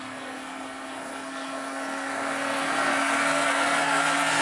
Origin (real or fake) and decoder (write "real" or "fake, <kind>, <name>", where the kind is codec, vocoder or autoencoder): fake, codec, SNAC